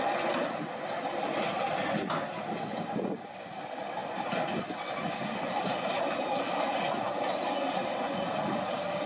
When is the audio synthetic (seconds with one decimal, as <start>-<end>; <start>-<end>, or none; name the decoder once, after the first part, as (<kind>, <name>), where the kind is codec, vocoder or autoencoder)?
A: none